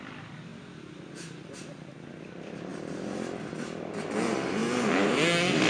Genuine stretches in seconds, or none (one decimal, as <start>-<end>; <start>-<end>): 0.5-2.2; 2.7-3.5